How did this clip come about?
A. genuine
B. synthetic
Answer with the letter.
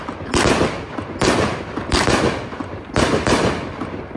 A